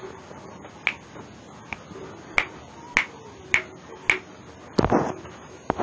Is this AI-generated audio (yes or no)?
no